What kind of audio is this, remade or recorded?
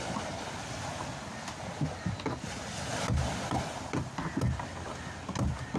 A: recorded